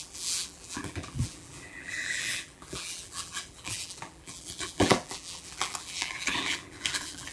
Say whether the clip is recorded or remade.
remade